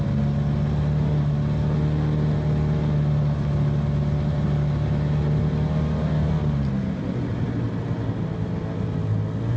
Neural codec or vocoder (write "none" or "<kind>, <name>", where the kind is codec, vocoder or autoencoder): none